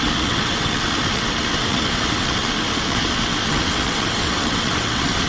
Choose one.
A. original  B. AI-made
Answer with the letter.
B